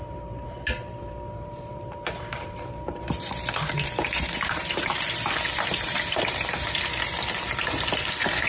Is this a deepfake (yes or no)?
yes